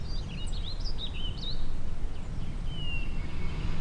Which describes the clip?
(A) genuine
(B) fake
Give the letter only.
A